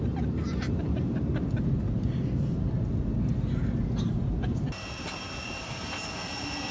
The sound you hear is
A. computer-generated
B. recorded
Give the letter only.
B